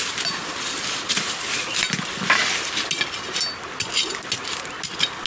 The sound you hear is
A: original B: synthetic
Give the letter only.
A